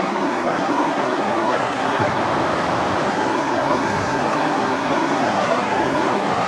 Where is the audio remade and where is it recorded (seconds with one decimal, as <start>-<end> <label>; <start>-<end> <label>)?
0.0-2.2 remade; 2.2-3.1 recorded; 3.1-6.5 remade